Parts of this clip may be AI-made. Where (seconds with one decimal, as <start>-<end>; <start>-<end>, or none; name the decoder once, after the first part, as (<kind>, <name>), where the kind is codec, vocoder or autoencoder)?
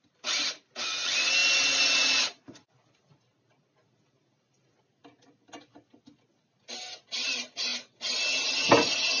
none